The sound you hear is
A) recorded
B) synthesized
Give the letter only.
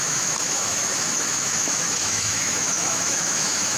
B